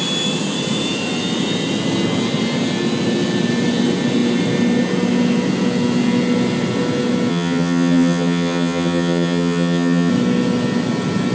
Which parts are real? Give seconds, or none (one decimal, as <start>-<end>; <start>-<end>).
0.0-7.3; 10.1-11.3